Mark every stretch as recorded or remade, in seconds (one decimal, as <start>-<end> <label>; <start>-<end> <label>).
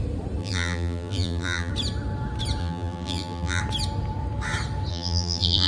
0.0-0.4 recorded; 0.4-1.7 remade; 1.7-2.6 recorded; 2.6-3.6 remade; 3.6-4.9 recorded; 4.9-5.7 remade